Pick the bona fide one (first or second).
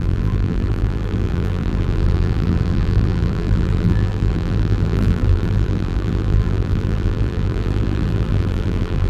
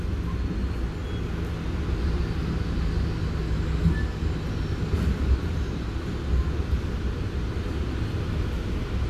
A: second